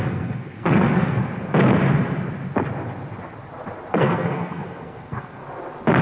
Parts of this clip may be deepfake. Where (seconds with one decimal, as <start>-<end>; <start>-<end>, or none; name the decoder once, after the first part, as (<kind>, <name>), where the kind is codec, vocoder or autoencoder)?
0.0-1.2 (codec, SNAC); 3.9-5.4